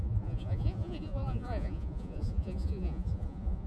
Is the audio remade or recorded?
remade